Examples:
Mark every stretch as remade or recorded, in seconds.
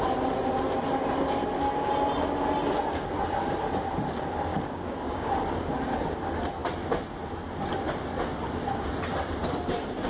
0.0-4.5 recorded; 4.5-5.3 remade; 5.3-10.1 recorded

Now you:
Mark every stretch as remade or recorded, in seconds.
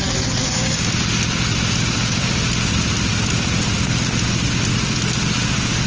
0.0-0.4 recorded; 0.4-0.9 remade; 0.9-5.9 recorded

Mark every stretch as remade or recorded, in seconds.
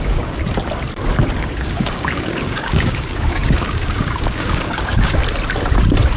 0.0-0.4 remade; 0.4-1.4 recorded; 1.4-5.2 remade; 5.2-6.2 recorded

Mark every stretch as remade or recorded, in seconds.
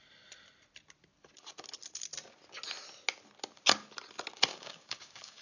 0.0-4.5 recorded; 4.5-5.4 remade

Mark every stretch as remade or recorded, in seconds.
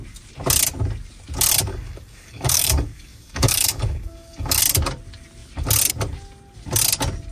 0.0-1.7 recorded; 1.7-4.6 remade; 4.6-7.3 recorded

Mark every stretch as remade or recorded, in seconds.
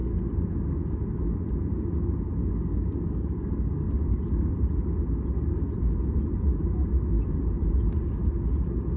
0.0-2.4 recorded; 2.4-4.5 remade; 4.5-9.0 recorded